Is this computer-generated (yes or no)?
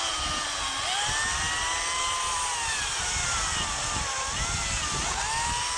no